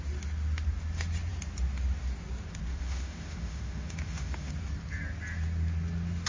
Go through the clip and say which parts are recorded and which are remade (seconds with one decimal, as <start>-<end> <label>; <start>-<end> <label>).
0.0-2.7 recorded; 2.7-4.5 remade; 4.5-6.3 recorded